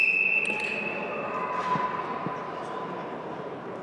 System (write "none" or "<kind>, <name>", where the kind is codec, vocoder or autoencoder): none